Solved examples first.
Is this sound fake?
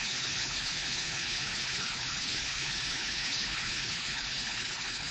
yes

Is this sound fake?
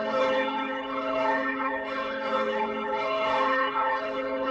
yes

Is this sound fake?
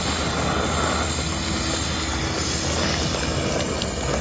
no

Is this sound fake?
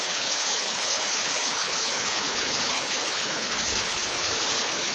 yes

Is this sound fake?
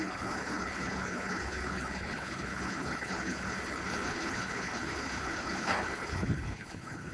yes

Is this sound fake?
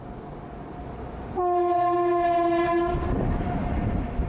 no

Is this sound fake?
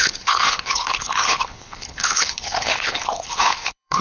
yes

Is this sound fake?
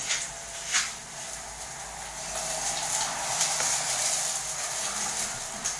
no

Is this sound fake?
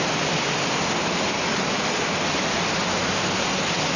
no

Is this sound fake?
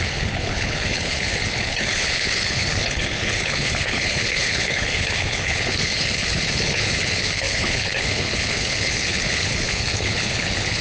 yes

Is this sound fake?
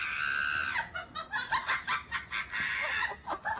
no